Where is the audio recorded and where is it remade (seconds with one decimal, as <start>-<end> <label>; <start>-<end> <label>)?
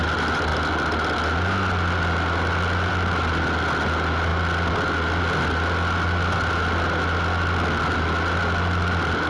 0.0-9.3 recorded